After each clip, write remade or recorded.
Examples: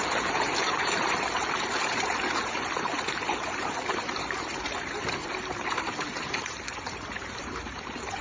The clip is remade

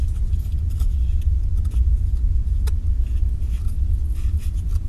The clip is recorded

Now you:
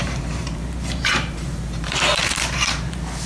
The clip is remade